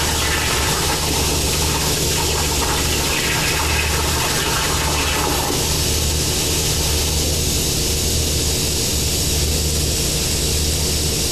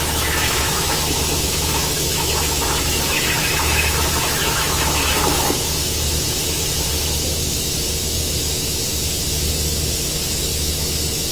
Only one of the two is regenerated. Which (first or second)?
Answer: second